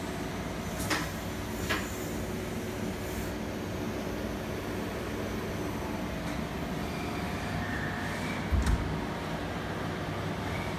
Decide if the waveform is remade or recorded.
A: recorded